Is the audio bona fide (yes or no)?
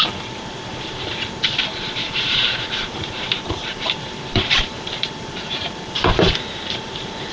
no